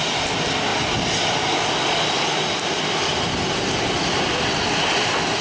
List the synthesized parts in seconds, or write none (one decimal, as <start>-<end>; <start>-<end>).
none